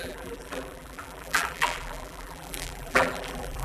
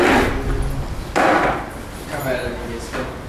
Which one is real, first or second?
second